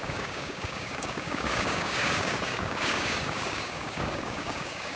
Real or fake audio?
fake